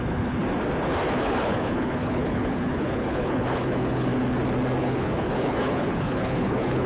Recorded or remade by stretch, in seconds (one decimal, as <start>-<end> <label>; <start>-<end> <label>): 0.0-0.4 remade; 0.4-1.2 recorded; 1.2-4.1 remade; 4.1-4.8 recorded; 4.8-6.9 remade